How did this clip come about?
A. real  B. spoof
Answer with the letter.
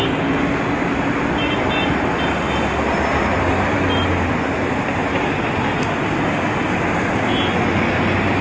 A